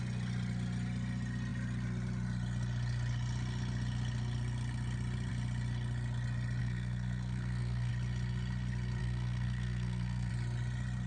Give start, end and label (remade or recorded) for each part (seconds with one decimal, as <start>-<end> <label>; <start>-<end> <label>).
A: 0.0-6.6 recorded; 6.6-7.9 remade; 7.9-9.0 recorded; 9.0-10.3 remade; 10.3-11.1 recorded

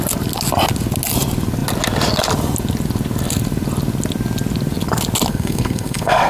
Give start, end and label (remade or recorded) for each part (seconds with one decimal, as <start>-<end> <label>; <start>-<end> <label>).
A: 0.0-5.3 recorded; 5.3-6.3 remade

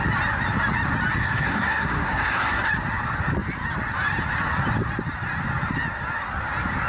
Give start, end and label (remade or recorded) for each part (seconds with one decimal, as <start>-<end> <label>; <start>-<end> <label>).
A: 0.0-1.2 recorded; 1.2-2.7 remade; 2.7-6.9 recorded

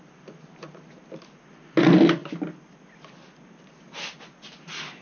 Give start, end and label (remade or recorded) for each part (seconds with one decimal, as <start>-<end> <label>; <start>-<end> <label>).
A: 0.0-5.0 recorded